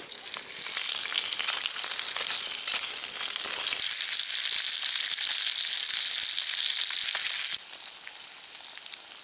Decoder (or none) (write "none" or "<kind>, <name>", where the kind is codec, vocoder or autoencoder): none